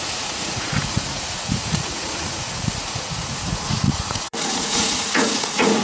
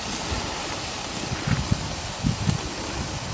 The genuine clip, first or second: second